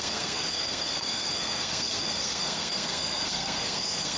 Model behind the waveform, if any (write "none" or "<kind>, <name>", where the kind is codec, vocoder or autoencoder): codec, SNAC